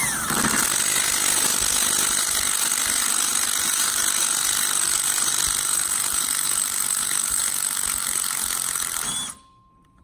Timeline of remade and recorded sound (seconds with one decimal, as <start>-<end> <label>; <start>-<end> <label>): 0.0-10.0 recorded